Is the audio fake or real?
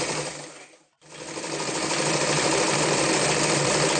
fake